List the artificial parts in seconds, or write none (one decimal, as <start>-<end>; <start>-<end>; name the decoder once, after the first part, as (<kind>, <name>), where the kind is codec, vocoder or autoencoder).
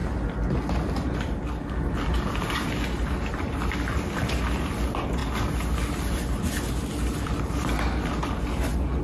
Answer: none